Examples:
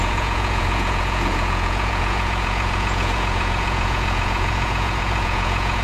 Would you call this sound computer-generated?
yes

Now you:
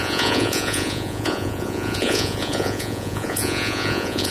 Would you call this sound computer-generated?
yes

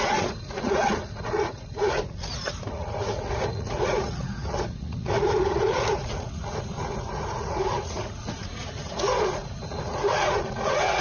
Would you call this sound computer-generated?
yes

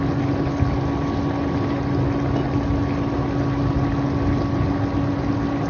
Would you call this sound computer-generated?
no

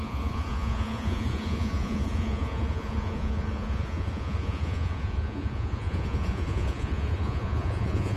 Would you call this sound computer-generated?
yes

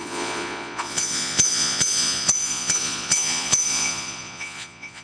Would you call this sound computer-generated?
yes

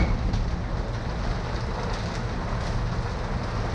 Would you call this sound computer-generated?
no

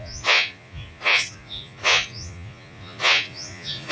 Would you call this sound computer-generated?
yes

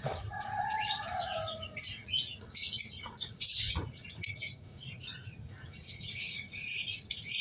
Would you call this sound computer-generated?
yes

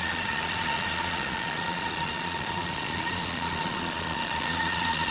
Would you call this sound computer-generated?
yes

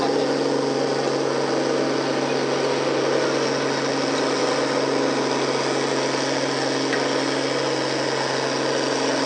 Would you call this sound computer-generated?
no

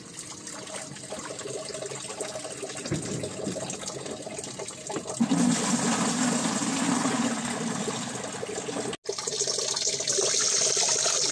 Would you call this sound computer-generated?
no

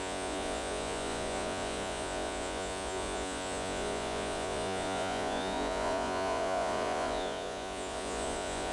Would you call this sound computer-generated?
yes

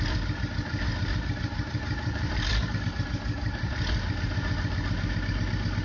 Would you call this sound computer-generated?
no